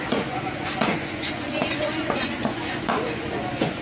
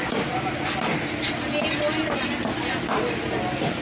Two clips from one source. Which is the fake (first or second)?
first